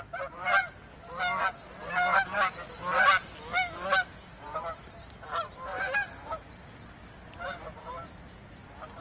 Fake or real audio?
real